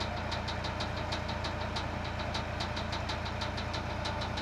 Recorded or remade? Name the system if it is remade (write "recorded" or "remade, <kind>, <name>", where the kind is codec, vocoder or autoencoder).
recorded